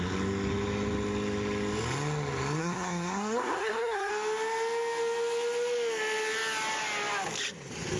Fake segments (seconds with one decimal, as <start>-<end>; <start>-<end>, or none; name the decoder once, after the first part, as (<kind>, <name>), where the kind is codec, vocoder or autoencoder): 2.6-4.1 (codec, SNAC)